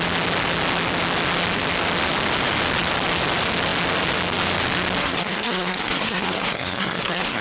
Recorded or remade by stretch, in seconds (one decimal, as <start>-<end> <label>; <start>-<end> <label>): 0.0-5.0 recorded; 5.0-7.4 remade